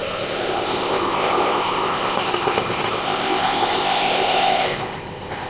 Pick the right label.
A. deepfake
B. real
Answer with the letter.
A